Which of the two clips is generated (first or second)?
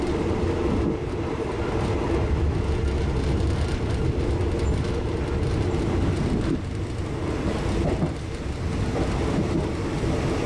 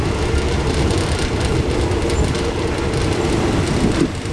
second